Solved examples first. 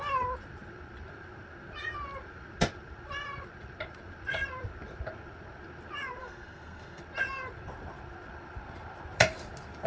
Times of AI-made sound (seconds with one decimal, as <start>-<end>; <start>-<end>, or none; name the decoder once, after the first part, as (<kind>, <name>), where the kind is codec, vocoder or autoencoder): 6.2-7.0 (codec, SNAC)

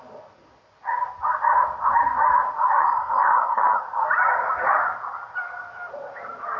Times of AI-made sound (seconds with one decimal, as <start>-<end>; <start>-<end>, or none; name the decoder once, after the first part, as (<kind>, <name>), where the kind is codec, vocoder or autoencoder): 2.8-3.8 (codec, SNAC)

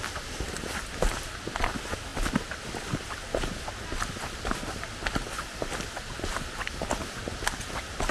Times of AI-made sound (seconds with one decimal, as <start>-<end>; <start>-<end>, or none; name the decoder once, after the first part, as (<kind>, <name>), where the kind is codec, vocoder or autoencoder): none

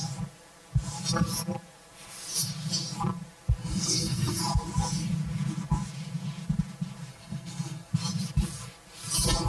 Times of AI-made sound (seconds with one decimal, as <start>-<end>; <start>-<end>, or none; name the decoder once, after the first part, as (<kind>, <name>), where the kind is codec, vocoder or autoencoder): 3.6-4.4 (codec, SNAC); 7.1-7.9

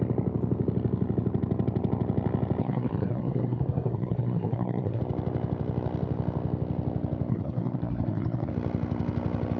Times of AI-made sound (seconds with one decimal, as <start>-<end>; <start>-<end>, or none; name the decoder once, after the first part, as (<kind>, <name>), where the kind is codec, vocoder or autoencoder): 2.6-5.0 (codec, SNAC); 7.3-8.5

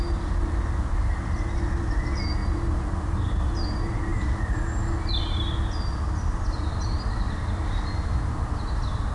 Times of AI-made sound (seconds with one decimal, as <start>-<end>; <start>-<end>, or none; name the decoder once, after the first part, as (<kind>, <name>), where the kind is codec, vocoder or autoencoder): none

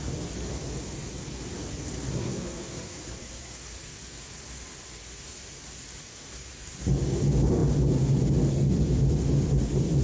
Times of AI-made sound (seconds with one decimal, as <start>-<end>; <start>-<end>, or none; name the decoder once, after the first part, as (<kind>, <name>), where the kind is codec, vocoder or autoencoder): 2.1-3.6 (codec, SNAC)

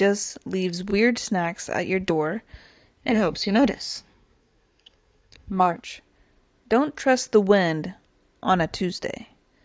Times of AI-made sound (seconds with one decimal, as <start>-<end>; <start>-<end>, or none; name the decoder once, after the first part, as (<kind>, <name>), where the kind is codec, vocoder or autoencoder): 3.0-5.8 (codec, SNAC)